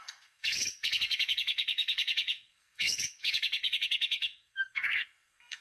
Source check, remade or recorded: remade